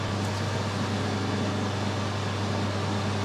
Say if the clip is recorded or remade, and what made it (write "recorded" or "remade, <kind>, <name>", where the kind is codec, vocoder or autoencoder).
recorded